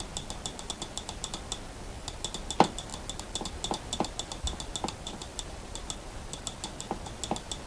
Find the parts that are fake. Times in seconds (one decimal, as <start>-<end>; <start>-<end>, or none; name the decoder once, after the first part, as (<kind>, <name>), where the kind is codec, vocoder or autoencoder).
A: none

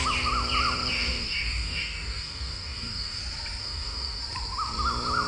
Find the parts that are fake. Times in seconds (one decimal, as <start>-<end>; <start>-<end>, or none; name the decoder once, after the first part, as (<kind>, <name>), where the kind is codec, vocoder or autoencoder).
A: 0.9-3.2 (codec, DAC); 3.6-4.2

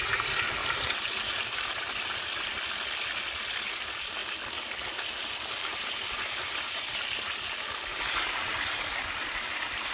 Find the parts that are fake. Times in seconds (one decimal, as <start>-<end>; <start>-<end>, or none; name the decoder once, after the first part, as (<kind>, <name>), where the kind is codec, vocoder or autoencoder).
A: 0.6-1.2 (vocoder, BigVGAN v2); 5.7-7.0; 7.9-9.9

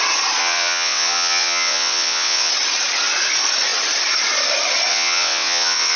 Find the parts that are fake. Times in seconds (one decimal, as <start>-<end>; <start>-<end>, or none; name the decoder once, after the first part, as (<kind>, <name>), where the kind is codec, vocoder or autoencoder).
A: 0.4-2.5 (vocoder, WaveNeXt); 4.9-6.0

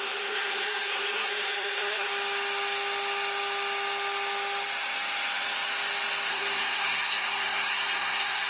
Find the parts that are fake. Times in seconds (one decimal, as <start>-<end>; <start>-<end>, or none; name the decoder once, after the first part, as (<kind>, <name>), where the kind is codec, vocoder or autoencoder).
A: 0.0-2.1 (codec, SNAC); 6.3-8.5